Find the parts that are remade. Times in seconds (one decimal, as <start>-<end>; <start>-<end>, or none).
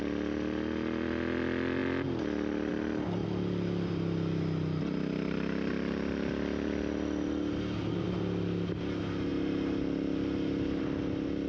none